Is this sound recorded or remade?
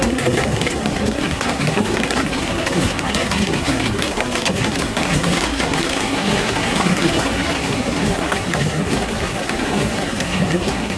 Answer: remade